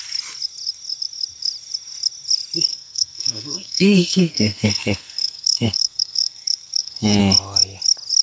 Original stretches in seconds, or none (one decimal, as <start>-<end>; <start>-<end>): 0.0-2.7; 7.2-8.2